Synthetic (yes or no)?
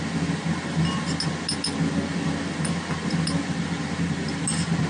no